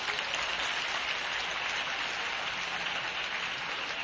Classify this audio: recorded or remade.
recorded